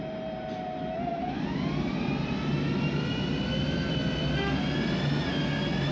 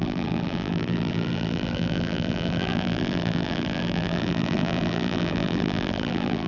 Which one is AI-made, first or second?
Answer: second